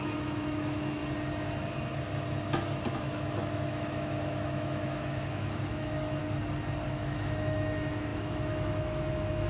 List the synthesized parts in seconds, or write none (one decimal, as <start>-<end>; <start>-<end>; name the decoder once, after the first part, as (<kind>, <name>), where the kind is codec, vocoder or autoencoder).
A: 0.0-1.0 (autoencoder, DAC-VAE); 2.9-6.2; 6.9-9.5